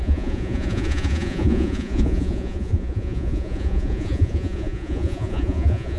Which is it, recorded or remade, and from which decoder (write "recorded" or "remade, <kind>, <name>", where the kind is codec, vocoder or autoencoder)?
remade, vocoder, Vocos